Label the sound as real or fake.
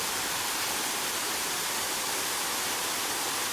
fake